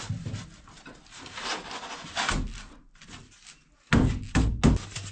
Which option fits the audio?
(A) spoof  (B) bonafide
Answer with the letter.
B